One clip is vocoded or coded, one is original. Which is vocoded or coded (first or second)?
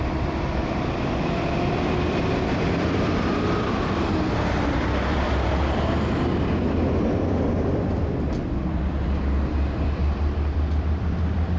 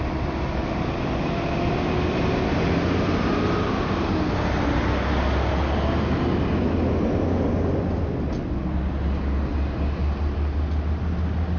first